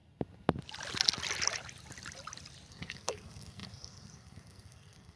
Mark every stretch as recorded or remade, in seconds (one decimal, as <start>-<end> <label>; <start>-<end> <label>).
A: 0.0-2.7 recorded; 2.7-5.2 remade